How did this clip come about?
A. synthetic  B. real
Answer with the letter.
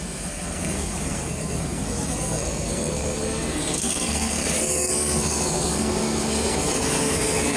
A